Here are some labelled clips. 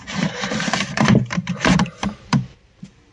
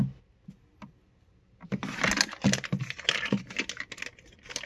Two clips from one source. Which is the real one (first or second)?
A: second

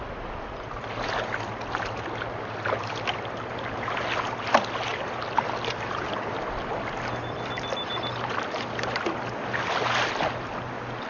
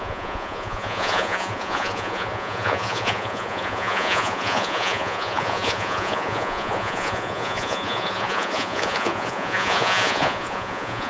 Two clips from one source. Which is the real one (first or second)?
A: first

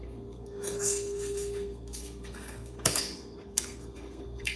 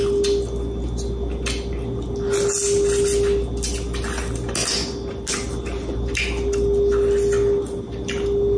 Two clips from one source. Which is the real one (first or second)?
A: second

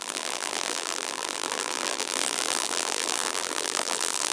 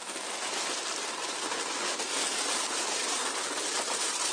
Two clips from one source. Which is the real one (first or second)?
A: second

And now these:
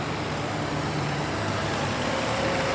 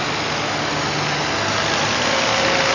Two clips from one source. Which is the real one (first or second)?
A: second